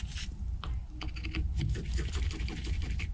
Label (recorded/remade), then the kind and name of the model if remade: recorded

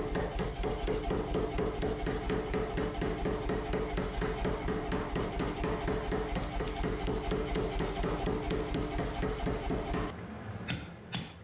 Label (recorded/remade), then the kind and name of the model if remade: recorded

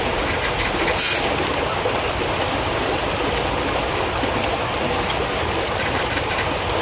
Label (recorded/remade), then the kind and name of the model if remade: recorded